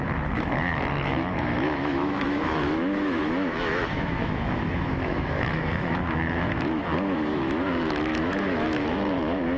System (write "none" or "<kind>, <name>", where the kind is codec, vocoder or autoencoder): autoencoder, DAC-VAE